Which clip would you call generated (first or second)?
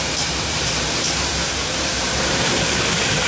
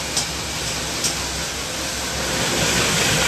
first